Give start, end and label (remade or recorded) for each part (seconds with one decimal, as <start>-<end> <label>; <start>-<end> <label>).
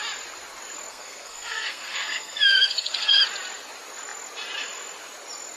0.0-0.9 recorded; 0.9-3.2 remade; 3.2-5.6 recorded